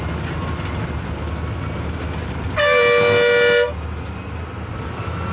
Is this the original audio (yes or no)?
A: yes